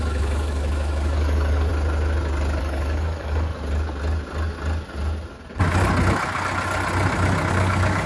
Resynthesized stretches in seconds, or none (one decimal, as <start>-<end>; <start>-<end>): 0.0-1.7; 2.6-3.5; 7.5-8.1